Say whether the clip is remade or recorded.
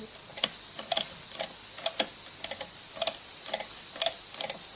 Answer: recorded